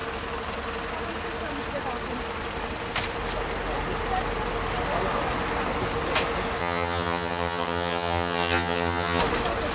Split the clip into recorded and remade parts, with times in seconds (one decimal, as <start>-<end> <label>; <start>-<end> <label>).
0.0-6.6 recorded; 6.6-9.2 remade; 9.2-9.7 recorded